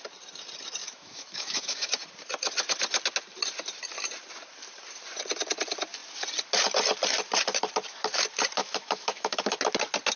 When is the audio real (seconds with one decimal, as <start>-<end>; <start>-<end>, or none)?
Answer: 0.0-0.8; 1.9-8.6; 9.4-10.2